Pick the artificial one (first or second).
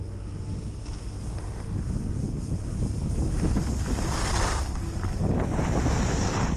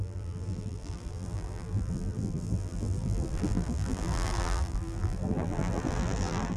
second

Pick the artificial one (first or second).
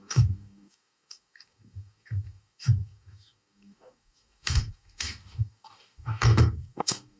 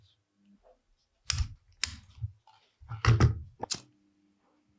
first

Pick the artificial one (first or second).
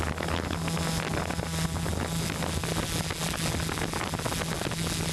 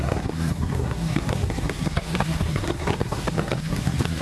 second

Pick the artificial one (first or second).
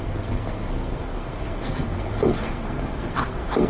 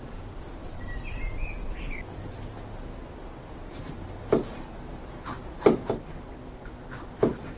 first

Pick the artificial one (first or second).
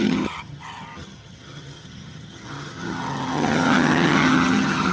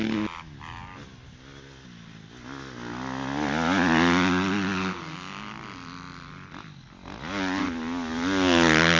first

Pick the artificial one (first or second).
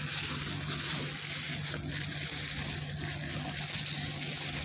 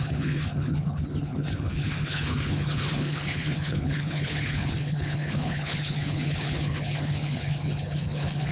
second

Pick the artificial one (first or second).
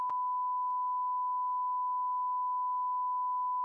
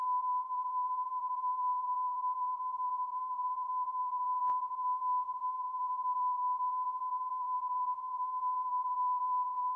second